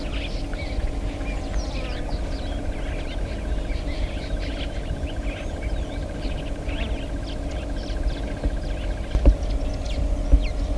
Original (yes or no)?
yes